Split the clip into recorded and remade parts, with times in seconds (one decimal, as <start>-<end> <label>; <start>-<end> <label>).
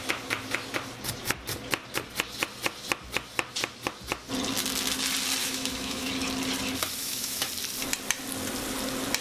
0.0-5.4 recorded; 5.4-6.1 remade; 6.1-7.0 recorded; 7.0-7.5 remade; 7.5-9.2 recorded